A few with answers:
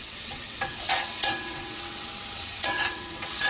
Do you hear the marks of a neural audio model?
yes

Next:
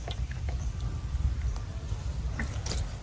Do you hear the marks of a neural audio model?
yes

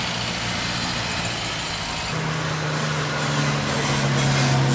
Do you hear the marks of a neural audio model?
no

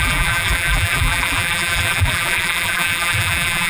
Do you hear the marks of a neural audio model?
yes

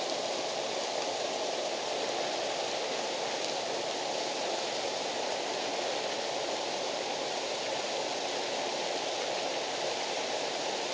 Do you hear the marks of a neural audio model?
no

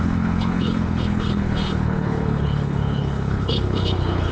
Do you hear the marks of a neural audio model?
yes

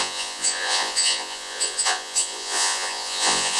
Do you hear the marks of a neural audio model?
yes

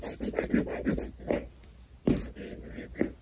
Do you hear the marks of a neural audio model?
no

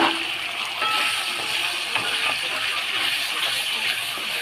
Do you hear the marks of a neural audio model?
no